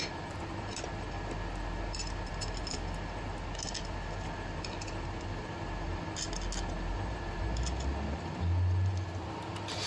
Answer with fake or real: real